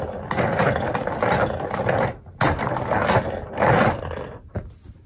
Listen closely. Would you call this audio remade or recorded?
recorded